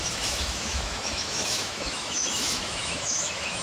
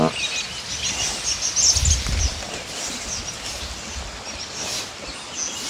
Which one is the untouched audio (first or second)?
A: second